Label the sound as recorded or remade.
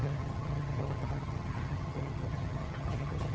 remade